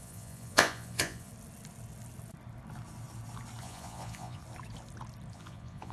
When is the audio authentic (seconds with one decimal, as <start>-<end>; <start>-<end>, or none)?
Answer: 1.3-3.6; 4.4-5.3